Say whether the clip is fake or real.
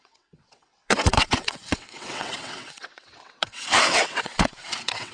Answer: fake